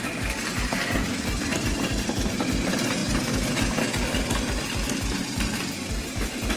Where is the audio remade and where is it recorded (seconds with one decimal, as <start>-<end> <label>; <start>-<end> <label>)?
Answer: 0.0-6.6 recorded